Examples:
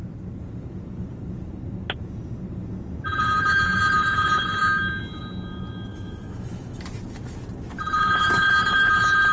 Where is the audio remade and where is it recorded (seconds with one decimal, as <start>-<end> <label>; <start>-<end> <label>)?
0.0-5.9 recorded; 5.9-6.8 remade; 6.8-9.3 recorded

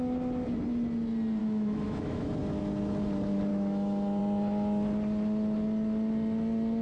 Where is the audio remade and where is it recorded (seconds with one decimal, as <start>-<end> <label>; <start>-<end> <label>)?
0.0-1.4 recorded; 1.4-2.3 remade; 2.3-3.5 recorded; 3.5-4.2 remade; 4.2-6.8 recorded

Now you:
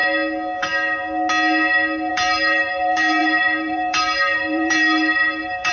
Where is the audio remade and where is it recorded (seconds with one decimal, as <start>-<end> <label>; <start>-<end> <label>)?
0.0-2.1 recorded; 2.1-5.7 remade

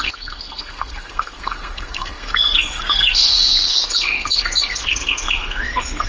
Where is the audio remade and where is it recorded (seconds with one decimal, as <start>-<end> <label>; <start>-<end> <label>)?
0.0-6.1 remade